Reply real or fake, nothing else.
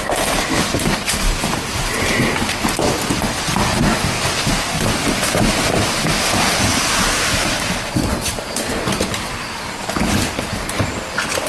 real